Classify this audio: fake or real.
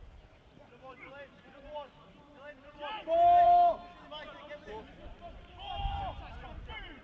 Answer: fake